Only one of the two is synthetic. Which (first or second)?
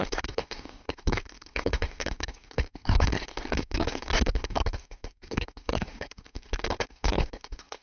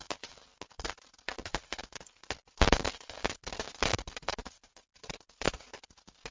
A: first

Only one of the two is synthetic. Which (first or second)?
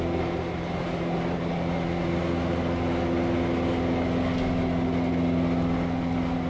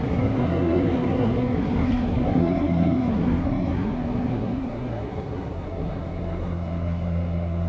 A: second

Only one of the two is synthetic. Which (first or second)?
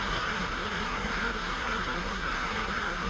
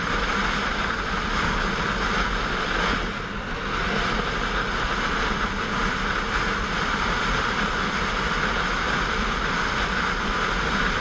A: first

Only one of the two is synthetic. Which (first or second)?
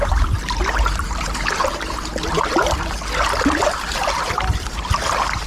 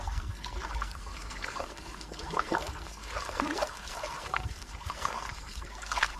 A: second